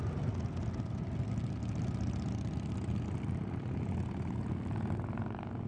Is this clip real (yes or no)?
yes